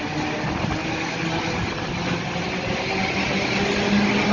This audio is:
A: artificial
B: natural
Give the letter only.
B